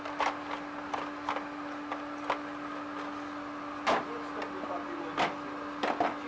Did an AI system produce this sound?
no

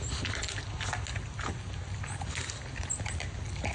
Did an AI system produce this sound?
no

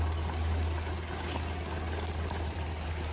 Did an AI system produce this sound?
no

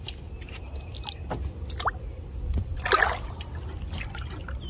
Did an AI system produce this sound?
no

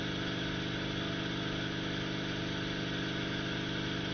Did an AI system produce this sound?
no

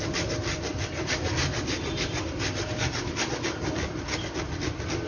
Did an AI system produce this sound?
yes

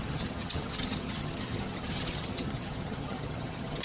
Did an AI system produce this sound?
yes